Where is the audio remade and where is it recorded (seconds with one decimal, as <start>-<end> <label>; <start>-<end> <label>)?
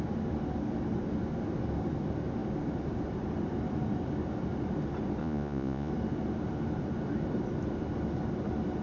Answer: 0.0-5.2 recorded; 5.2-5.9 remade; 5.9-8.8 recorded